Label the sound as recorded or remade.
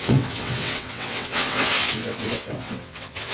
remade